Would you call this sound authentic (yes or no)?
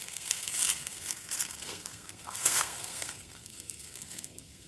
no